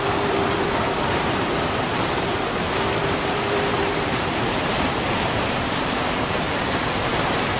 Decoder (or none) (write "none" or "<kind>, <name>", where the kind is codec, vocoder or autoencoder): vocoder, BigVGAN v2